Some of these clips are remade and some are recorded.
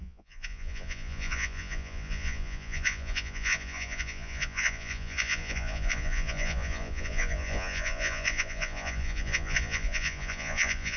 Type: remade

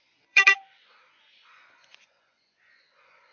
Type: remade